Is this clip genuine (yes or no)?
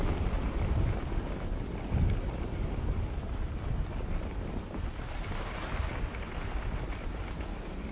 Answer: yes